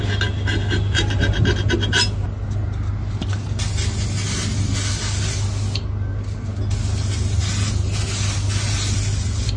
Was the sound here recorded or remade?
recorded